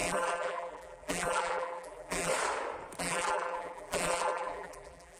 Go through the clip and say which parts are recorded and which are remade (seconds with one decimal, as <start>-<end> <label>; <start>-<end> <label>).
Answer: 0.0-2.3 remade; 2.3-3.0 recorded; 3.0-5.2 remade